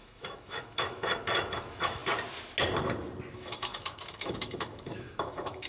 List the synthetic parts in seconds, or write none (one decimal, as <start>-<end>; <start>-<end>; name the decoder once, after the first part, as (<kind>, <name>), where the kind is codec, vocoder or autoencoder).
0.0-2.0 (autoencoder, DAC-VAE); 3.3-5.7